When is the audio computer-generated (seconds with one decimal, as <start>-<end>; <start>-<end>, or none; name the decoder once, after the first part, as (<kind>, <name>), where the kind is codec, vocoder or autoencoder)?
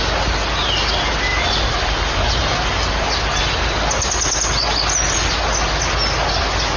none